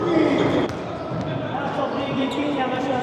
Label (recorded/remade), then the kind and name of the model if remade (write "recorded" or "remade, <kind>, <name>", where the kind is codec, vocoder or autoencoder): remade, vocoder, BigVGAN v2